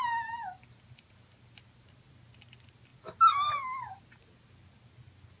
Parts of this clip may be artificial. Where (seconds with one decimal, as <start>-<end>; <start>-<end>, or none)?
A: none